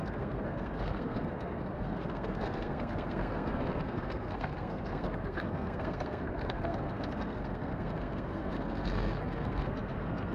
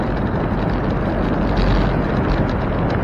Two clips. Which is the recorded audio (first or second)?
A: second